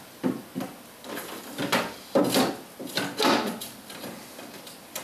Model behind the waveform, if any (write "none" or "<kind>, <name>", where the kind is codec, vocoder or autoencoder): none